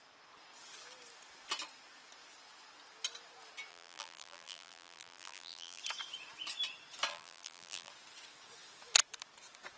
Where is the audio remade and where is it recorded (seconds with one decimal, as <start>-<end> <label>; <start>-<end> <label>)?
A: 0.0-3.7 recorded; 3.7-5.8 remade; 5.8-7.1 recorded; 7.1-7.9 remade; 7.9-9.8 recorded